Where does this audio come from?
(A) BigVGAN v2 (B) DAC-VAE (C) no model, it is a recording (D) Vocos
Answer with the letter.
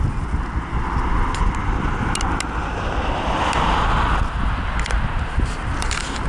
C